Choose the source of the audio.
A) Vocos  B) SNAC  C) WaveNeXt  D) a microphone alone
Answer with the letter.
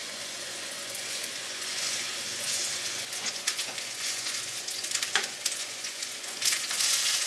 A